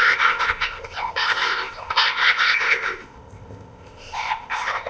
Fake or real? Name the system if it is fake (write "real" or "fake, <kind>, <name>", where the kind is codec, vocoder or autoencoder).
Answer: fake, codec, ZipCodec